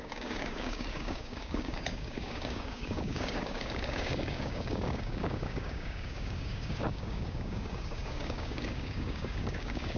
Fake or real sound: fake